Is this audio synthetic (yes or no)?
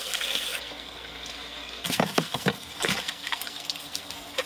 yes